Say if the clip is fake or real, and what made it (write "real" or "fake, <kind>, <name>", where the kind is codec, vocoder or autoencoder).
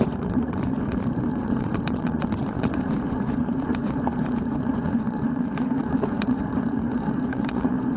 fake, vocoder, Vocos